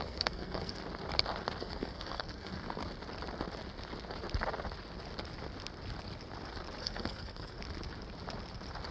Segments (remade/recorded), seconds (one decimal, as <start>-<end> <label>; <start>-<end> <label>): 0.0-0.8 remade; 0.8-1.6 recorded; 1.6-2.8 remade; 2.8-6.8 recorded; 6.8-7.6 remade; 7.6-8.9 recorded